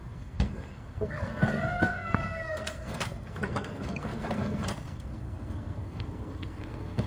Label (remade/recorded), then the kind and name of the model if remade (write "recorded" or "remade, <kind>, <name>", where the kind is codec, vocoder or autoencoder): remade, codec, SNAC